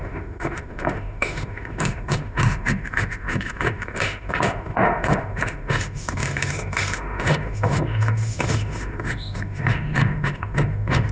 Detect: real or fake fake